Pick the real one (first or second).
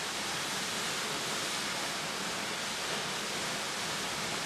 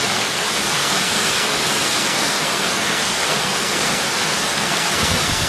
first